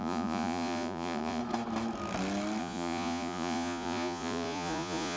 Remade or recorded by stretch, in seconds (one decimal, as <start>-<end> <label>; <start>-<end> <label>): 0.0-1.4 remade; 1.4-2.6 recorded; 2.6-5.2 remade